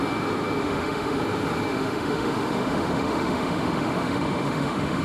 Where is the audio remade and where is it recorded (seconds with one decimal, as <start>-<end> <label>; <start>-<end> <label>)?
0.0-0.6 recorded; 0.6-1.2 remade; 1.2-1.7 recorded; 1.7-5.0 remade